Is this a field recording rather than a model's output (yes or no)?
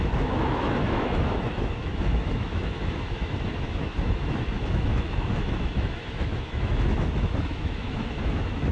no